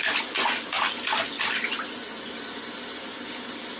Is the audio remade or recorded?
recorded